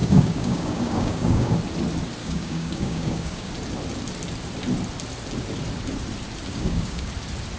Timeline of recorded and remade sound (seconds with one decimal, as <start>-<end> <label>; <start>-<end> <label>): 0.0-1.6 remade; 1.6-2.2 recorded; 2.2-3.5 remade; 3.5-6.5 recorded; 6.5-7.1 remade; 7.1-7.6 recorded